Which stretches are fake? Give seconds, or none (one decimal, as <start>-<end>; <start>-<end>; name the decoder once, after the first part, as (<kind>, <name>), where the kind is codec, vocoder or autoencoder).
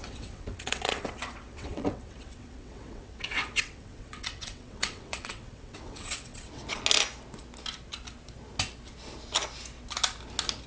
0.0-6.6 (vocoder, WaveNeXt)